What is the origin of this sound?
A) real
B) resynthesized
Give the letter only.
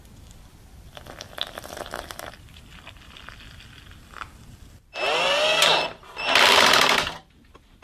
A